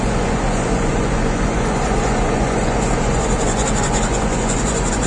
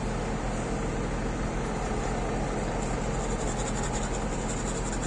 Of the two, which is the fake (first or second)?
first